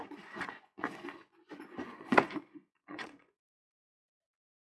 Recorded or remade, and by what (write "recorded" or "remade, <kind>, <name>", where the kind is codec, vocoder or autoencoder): remade, vocoder, Vocos